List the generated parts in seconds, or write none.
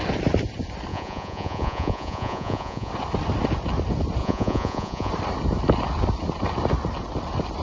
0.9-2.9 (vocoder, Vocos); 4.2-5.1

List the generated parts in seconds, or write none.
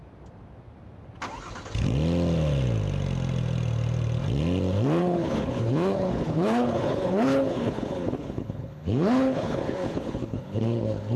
5.0-11.2 (codec, HILCodec)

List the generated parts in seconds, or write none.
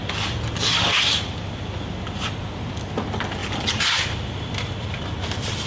3.4-5.0 (vocoder, BigVGAN v2)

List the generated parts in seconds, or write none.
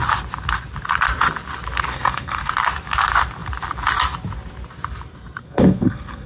1.9-2.5 (codec, SNAC); 5.4-6.3